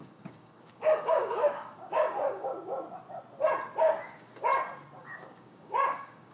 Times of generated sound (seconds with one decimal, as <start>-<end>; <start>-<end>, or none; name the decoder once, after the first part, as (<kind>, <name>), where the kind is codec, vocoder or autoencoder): 0.0-2.5 (codec, DAC); 3.9-4.5; 5.0-6.3